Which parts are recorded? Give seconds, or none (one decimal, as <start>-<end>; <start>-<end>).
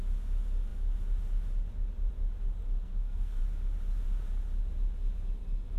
0.0-2.6; 3.4-5.8